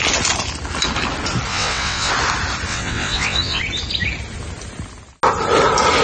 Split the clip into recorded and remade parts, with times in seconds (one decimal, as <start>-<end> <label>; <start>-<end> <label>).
0.0-1.5 recorded; 1.5-2.1 remade; 2.1-2.7 recorded; 2.7-3.6 remade; 3.6-6.0 recorded